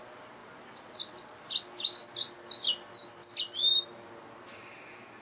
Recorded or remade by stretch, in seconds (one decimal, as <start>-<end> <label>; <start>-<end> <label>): 0.0-5.2 recorded